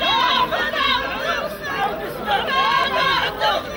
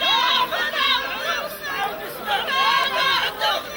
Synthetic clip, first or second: first